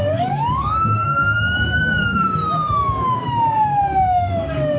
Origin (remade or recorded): remade